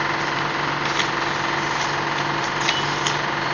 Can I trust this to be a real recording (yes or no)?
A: yes